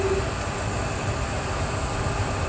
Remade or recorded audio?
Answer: recorded